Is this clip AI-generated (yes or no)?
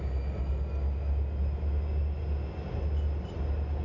no